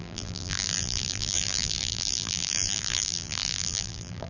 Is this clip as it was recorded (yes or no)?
no